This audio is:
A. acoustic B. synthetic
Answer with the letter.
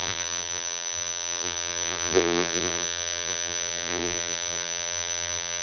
B